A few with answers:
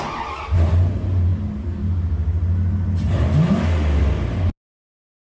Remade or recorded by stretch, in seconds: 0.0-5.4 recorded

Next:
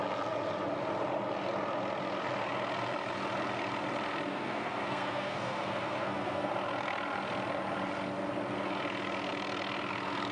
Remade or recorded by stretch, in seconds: 0.0-4.3 recorded; 4.3-6.5 remade; 6.5-10.3 recorded

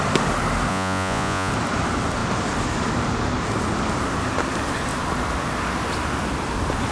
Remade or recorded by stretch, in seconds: 0.0-0.7 recorded; 0.7-1.5 remade; 1.5-6.9 recorded